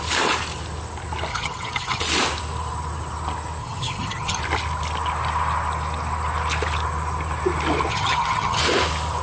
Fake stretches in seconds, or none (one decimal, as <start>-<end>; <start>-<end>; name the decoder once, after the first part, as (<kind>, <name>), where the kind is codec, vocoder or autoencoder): 1.3-2.0 (vocoder, HiFi-GAN); 3.6-4.4; 7.9-8.6